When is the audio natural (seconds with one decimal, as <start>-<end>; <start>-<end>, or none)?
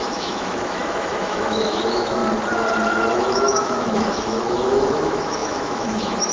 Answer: 2.2-3.1